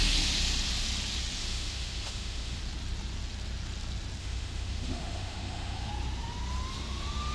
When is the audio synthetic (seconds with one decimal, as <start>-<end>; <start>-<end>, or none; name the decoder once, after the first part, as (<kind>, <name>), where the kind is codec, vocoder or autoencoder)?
1.4-2.6 (autoencoder, DAC-VAE); 4.2-5.9